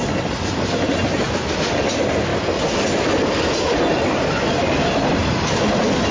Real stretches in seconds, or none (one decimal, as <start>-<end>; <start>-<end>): 0.0-6.1